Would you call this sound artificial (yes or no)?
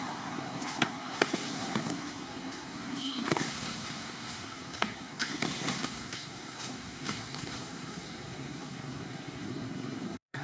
yes